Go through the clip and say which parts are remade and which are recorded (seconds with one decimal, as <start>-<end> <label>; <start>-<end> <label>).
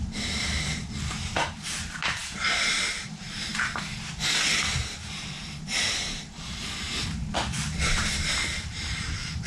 0.0-3.5 remade; 3.5-4.9 recorded; 4.9-9.5 remade